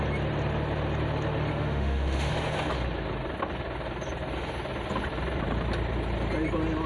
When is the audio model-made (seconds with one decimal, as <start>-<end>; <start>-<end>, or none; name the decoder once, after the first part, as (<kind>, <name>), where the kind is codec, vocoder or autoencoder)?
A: 1.5-2.3 (autoencoder, DAC-VAE)